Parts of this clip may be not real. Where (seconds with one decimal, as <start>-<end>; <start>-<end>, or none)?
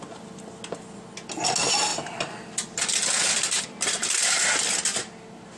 none